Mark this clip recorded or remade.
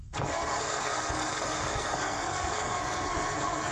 remade